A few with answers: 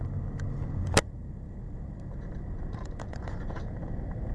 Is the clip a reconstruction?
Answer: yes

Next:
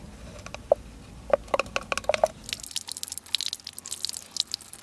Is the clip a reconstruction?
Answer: no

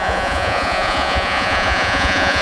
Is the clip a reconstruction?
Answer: yes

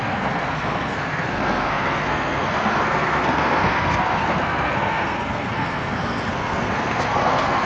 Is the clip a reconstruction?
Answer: yes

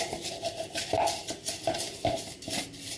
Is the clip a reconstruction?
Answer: no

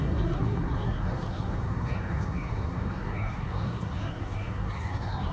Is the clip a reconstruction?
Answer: yes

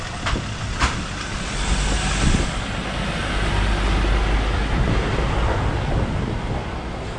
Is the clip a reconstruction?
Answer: no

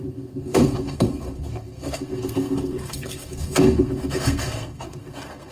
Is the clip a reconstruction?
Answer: yes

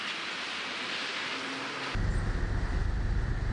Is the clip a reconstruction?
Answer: no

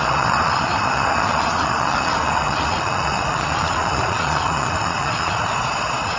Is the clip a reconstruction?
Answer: yes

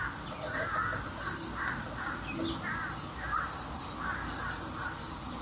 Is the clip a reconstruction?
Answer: no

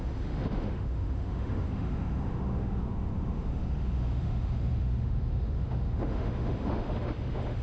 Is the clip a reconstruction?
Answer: yes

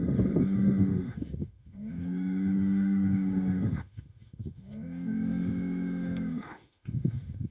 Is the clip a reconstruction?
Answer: yes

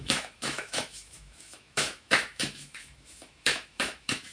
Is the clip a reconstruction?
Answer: yes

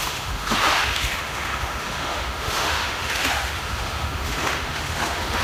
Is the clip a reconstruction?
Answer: yes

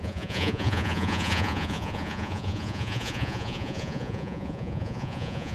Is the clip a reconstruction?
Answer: yes